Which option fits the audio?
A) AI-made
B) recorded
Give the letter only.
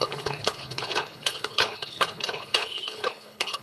A